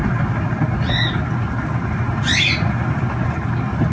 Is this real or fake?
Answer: real